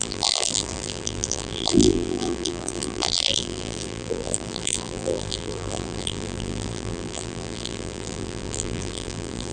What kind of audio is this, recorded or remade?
remade